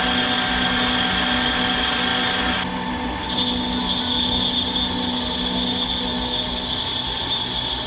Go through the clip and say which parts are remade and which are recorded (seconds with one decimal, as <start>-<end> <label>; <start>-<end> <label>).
0.0-7.9 recorded